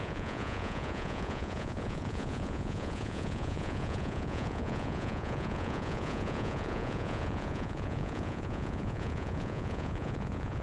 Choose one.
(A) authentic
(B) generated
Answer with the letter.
B